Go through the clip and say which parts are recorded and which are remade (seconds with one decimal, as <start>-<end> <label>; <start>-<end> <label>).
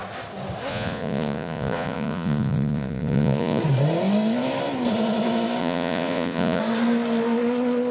0.0-0.7 recorded; 0.7-3.6 remade; 3.6-5.6 recorded; 5.6-6.6 remade; 6.6-7.9 recorded